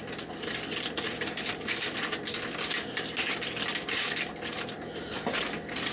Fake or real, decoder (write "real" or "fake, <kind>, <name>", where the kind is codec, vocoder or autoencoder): real